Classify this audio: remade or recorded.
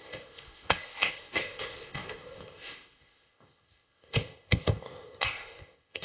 remade